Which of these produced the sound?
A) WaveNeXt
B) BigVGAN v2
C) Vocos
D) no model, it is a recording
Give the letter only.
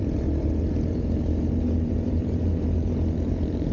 B